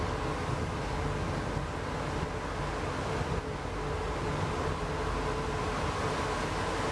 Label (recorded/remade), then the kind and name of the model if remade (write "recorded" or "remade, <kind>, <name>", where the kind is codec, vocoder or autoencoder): recorded